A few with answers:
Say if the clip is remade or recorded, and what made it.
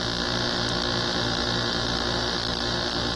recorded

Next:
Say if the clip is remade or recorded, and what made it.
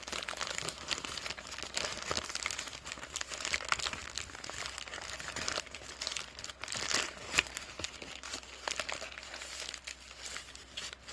recorded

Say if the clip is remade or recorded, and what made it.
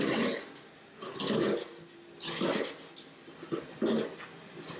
recorded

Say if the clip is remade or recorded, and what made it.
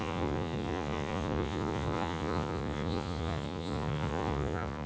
remade, vocoder, Vocos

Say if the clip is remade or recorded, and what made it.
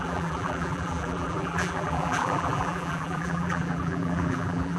remade, vocoder, BigVGAN v2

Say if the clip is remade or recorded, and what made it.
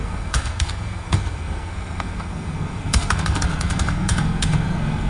remade, codec, SNAC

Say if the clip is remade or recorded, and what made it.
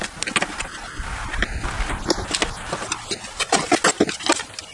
recorded